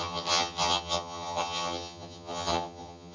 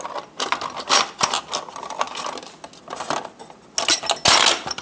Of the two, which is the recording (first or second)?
second